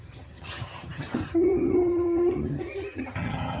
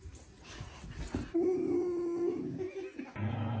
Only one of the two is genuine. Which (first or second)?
second